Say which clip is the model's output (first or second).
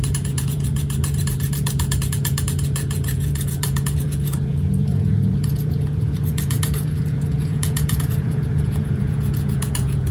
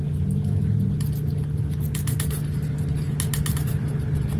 first